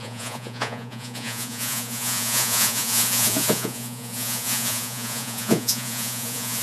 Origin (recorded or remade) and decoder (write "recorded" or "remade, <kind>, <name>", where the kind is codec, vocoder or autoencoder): remade, vocoder, Vocos